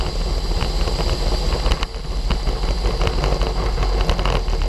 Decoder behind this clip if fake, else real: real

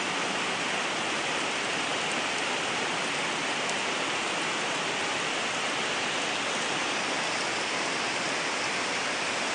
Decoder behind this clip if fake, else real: real